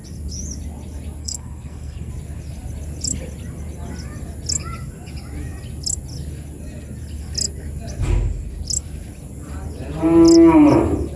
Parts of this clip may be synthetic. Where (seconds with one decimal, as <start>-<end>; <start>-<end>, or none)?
1.2-2.1